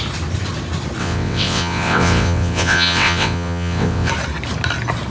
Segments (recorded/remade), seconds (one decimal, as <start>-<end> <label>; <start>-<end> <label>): 0.0-1.0 recorded; 1.0-4.1 remade; 4.1-5.1 recorded